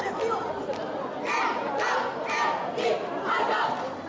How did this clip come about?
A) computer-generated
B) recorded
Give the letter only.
B